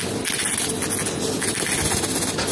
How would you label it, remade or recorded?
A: recorded